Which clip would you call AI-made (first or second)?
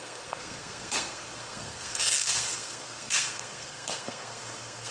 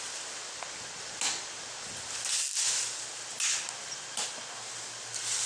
first